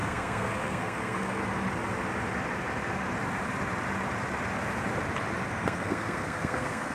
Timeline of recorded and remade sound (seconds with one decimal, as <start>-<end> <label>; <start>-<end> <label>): 0.0-1.4 remade; 1.4-5.5 recorded; 5.5-6.9 remade